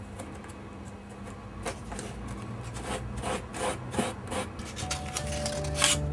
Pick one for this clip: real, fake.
real